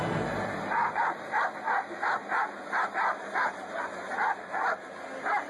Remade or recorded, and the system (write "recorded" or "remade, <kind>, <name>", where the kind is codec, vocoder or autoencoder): recorded